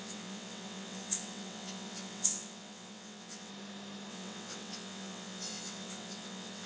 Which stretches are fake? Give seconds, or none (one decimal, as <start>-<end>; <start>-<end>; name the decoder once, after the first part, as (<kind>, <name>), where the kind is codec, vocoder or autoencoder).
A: 0.0-3.5 (vocoder, WaveNeXt); 4.1-6.7